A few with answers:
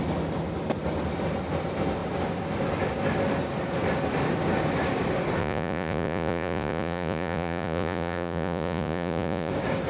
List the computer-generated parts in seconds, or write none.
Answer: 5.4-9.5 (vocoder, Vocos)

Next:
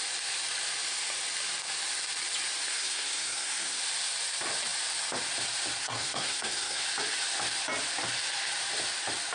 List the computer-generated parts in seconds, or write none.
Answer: 2.6-3.8 (codec, SNAC); 5.8-6.8

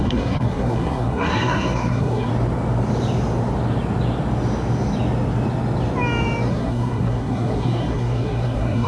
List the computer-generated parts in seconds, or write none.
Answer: 0.0-2.3 (codec, SNAC); 6.5-8.9

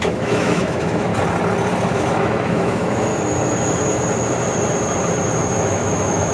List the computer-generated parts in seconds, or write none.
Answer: 0.0-1.1 (autoencoder, DAC-VAE); 1.9-3.1; 5.6-6.3

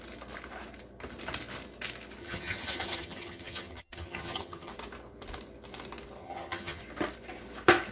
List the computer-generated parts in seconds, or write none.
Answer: 2.2-4.7 (vocoder, HiFi-GAN); 6.2-6.8